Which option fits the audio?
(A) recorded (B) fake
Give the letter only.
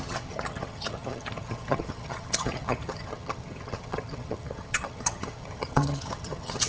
B